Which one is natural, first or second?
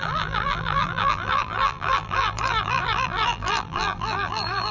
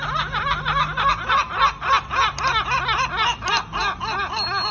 second